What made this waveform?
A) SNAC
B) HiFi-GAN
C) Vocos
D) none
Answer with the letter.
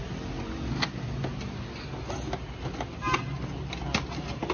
D